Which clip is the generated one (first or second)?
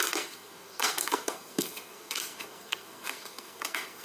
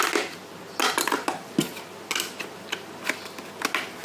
first